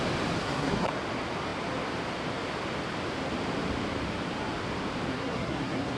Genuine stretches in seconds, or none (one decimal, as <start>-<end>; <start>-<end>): 0.0-0.4; 0.9-5.1